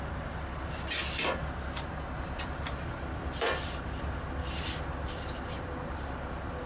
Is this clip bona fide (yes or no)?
yes